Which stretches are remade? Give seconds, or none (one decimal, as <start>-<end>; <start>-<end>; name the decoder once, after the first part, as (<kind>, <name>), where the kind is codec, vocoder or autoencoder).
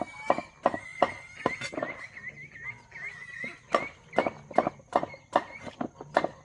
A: none